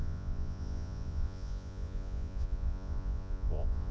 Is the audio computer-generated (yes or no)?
yes